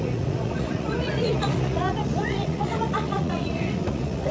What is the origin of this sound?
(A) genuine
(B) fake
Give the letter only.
B